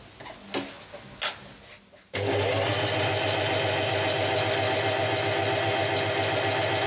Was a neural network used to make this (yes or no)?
no